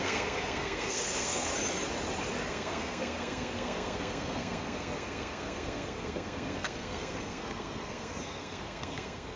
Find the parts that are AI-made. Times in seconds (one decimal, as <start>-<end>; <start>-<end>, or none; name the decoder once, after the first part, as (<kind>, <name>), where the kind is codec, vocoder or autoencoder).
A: 0.0-1.5 (codec, SNAC); 2.5-9.4